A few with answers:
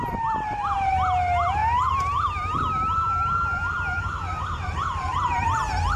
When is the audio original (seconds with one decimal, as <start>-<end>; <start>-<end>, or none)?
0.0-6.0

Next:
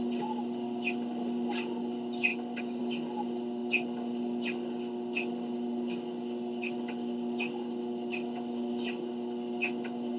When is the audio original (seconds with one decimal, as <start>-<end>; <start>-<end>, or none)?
0.0-10.2

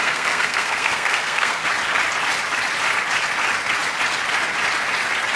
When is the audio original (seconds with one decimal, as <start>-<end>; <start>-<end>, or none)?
1.7-5.4

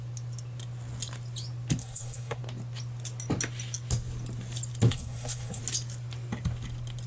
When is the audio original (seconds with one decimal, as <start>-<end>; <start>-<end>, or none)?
0.0-1.8; 2.4-4.9; 5.6-7.1

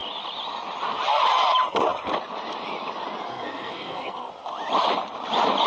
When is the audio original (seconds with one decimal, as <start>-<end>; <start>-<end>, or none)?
0.0-3.3; 4.3-5.7